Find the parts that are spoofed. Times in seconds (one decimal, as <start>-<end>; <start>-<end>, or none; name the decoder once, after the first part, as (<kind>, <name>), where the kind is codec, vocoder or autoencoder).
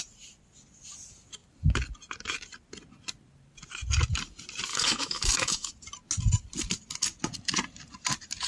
4.7-5.7 (autoencoder, DAC-VAE)